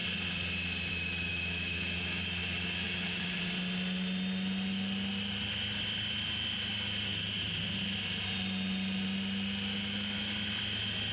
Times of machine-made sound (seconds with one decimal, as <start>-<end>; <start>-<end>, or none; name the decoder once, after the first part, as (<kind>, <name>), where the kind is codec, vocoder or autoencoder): 1.3-3.4 (autoencoder, DAC-VAE)